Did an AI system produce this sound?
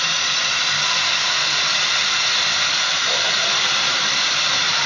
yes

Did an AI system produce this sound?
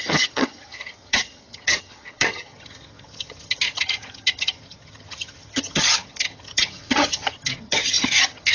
yes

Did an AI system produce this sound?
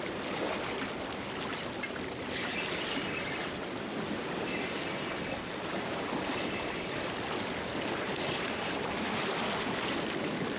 no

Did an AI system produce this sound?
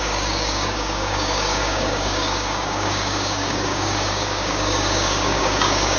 yes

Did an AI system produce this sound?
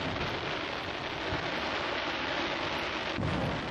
no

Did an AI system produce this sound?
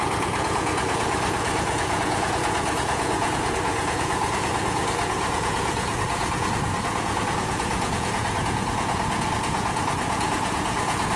yes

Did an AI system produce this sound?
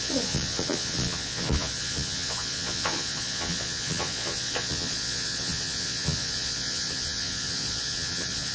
yes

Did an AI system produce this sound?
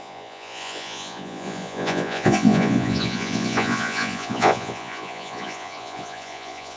yes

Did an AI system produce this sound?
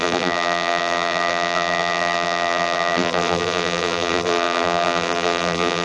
yes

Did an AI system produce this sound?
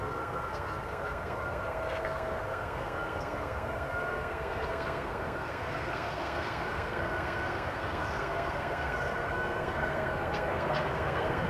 yes